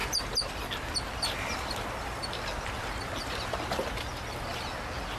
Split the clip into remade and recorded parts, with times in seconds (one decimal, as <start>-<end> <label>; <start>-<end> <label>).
0.0-5.2 recorded